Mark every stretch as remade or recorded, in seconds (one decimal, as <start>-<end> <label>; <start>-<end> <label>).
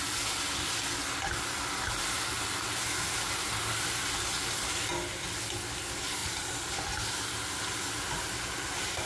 0.0-9.1 recorded